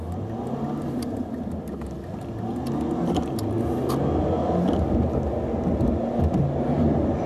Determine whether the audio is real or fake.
real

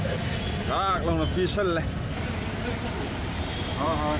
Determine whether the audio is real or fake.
real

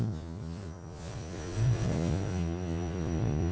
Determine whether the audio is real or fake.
fake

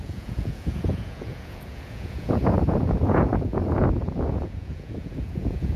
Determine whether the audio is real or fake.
fake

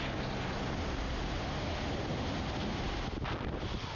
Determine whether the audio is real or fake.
real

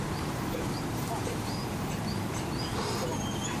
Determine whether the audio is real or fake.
fake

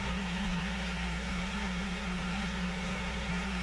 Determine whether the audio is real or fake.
fake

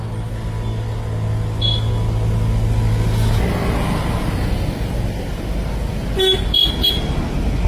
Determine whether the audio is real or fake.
real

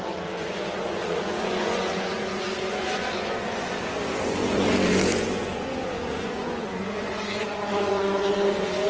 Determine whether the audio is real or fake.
fake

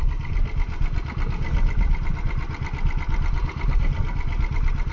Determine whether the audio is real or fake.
real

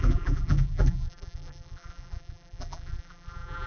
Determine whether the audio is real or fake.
fake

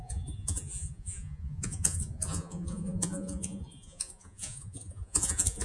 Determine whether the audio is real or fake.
fake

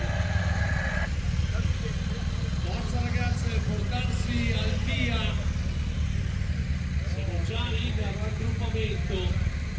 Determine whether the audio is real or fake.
real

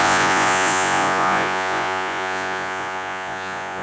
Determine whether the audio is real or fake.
fake